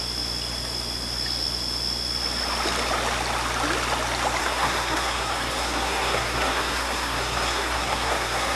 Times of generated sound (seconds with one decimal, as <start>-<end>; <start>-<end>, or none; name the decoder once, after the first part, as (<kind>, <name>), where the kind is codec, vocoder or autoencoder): 4.4-8.6 (codec, SNAC)